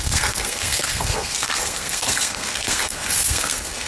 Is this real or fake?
fake